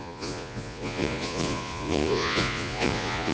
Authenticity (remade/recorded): remade